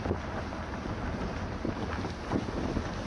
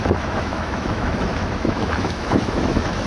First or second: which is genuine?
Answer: first